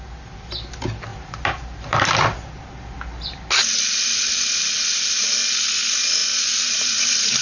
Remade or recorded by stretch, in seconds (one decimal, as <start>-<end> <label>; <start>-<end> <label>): 0.0-1.1 recorded; 1.1-2.7 remade; 2.7-6.2 recorded; 6.2-6.9 remade; 6.9-7.4 recorded